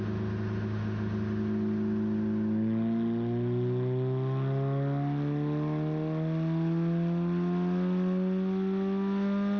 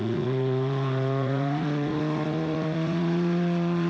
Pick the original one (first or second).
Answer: first